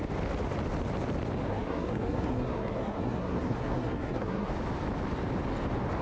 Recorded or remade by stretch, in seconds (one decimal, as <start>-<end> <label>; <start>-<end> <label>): 0.0-1.5 recorded; 1.5-4.5 remade; 4.5-6.0 recorded